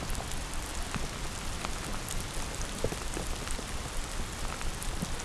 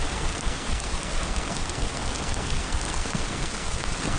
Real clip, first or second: first